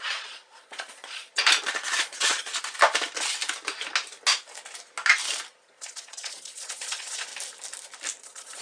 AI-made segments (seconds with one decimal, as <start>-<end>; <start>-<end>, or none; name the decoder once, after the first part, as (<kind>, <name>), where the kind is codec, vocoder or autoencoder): 0.0-1.4 (vocoder, Vocos); 2.0-2.5; 5.5-7.3; 8.2-8.6